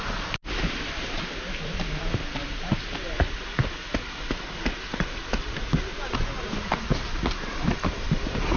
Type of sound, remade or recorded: recorded